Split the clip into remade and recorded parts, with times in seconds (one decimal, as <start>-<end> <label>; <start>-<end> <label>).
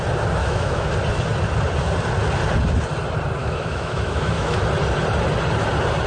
0.0-0.4 recorded; 0.4-0.9 remade; 0.9-3.4 recorded; 3.4-4.6 remade; 4.6-6.1 recorded